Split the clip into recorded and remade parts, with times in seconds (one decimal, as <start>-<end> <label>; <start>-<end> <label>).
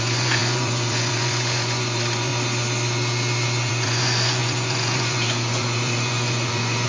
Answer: 0.0-2.3 remade; 2.3-3.7 recorded; 3.7-6.9 remade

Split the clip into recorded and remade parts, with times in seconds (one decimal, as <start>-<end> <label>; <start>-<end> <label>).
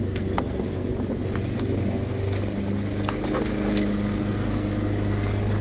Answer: 0.0-0.9 remade; 0.9-4.2 recorded; 4.2-4.7 remade; 4.7-5.6 recorded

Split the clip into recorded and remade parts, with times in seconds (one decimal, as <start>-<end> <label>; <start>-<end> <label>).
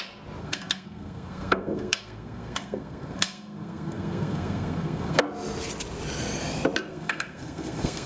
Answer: 0.0-0.4 recorded; 0.4-5.2 remade; 5.2-6.9 recorded; 6.9-8.1 remade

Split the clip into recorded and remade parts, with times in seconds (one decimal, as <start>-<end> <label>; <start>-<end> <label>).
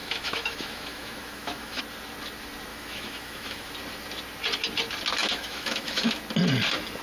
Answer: 0.0-1.8 remade; 1.8-2.7 recorded; 2.7-3.7 remade; 3.7-5.2 recorded; 5.2-6.2 remade; 6.2-7.0 recorded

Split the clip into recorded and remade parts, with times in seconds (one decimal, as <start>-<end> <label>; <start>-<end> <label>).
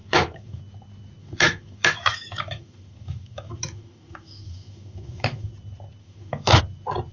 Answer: 0.0-0.6 remade; 0.6-1.2 recorded; 1.2-5.5 remade; 5.5-6.0 recorded; 6.0-6.6 remade; 6.6-7.1 recorded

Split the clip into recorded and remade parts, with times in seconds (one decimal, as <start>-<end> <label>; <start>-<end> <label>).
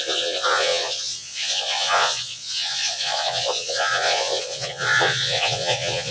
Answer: 0.0-6.1 remade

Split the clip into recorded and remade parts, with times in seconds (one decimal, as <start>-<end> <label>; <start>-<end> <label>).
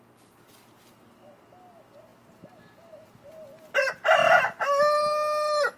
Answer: 0.0-5.8 recorded